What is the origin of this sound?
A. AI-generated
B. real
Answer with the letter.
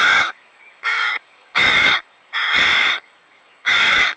A